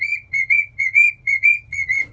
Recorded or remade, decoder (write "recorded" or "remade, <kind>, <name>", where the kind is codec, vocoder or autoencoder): remade, vocoder, Vocos